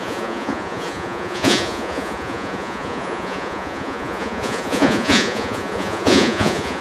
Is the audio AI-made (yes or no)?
yes